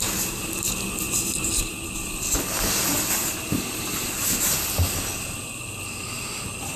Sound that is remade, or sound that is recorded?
recorded